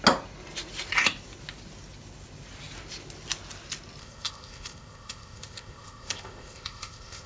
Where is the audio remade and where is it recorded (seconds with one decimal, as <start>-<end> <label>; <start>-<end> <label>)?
0.0-4.0 recorded; 4.0-7.3 remade